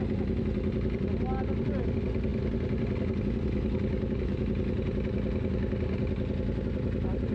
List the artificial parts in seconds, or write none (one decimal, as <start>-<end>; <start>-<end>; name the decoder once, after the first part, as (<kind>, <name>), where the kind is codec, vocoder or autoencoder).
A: none